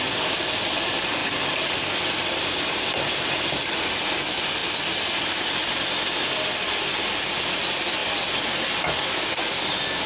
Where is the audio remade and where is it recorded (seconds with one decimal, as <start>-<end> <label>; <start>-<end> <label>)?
0.0-4.6 remade; 4.6-7.0 recorded; 7.0-8.0 remade; 8.0-9.3 recorded; 9.3-10.1 remade